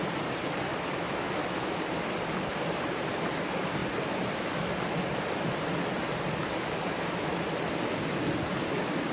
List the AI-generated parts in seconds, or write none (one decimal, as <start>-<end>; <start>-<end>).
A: 0.7-1.8